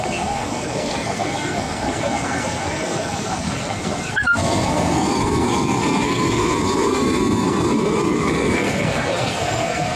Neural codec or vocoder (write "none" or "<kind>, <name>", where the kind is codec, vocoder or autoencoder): codec, SNAC